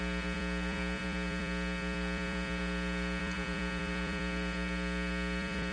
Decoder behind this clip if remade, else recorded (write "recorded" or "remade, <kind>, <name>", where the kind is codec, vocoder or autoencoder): remade, vocoder, BigVGAN v2